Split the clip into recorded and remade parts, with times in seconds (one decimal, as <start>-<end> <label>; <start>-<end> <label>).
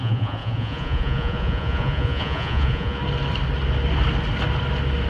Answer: 0.0-3.0 remade; 3.0-5.1 recorded